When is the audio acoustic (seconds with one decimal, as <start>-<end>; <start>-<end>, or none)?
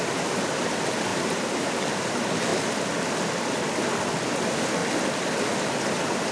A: 0.0-1.1; 1.9-6.3